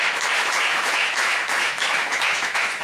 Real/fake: fake